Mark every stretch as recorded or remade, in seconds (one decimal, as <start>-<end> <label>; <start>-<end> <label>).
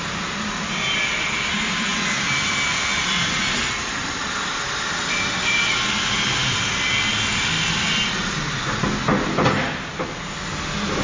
0.0-11.0 recorded